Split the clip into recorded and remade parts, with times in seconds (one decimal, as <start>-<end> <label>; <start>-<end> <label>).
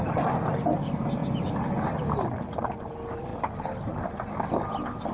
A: 0.0-5.1 recorded